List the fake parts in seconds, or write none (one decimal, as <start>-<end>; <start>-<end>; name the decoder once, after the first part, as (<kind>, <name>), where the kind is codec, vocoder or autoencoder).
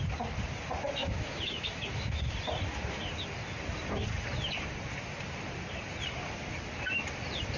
1.0-2.2 (autoencoder, DAC-VAE)